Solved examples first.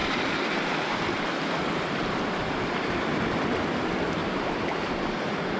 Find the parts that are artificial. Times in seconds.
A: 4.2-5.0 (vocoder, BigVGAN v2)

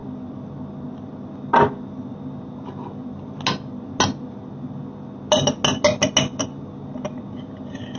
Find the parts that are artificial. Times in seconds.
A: none

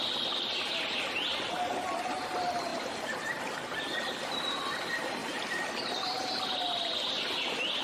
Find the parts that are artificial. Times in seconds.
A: 2.7-4.3 (vocoder, BigVGAN v2)

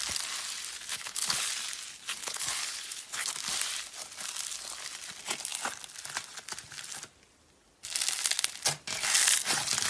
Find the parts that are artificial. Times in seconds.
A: 0.9-1.5 (codec, HILCodec); 2.2-3.3

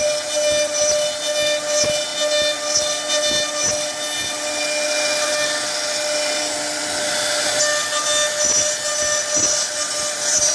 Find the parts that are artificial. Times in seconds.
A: none

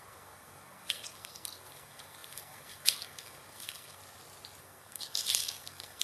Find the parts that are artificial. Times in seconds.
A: 0.0-4.0 (codec, SNAC); 4.6-6.0

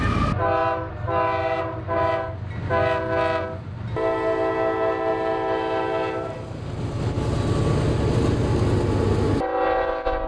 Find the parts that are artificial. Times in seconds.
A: none